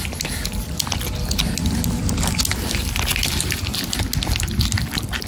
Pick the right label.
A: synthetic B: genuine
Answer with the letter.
B